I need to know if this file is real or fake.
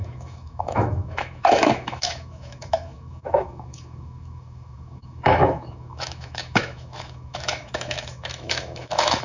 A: fake